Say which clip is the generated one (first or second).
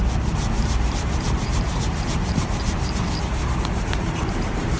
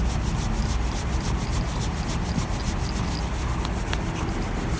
first